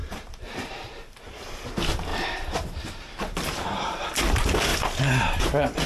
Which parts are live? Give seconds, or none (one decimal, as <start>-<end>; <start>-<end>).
1.3-2.1; 4.2-4.7; 5.4-5.9